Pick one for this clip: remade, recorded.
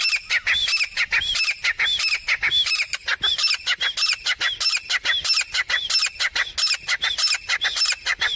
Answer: recorded